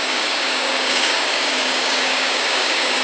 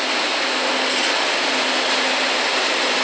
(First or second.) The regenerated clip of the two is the first